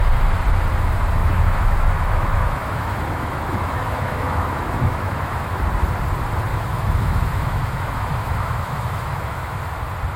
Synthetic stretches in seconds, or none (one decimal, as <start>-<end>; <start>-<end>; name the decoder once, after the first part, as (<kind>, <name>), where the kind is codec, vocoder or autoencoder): 1.2-5.6 (autoencoder, DAC-VAE); 6.5-9.6